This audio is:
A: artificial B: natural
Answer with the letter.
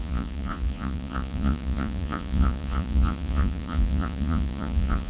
A